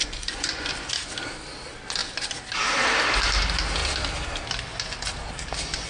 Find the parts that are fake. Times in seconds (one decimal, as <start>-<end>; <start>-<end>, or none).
0.0-0.7